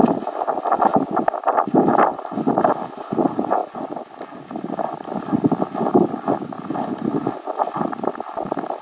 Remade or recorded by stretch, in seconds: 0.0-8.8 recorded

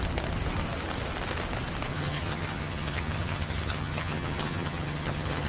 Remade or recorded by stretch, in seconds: 0.0-1.9 recorded; 1.9-5.5 remade